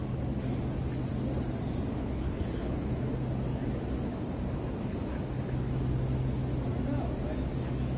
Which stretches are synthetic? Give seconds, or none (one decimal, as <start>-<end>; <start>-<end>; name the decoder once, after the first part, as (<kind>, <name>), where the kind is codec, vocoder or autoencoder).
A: 1.9-3.0 (codec, HILCodec)